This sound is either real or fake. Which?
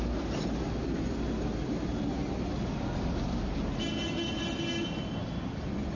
real